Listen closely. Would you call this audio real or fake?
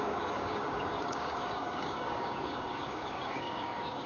fake